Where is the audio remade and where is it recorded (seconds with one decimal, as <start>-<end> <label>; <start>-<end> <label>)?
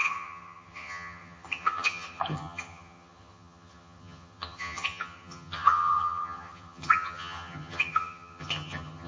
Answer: 0.0-9.1 remade